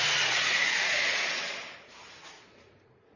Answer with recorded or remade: remade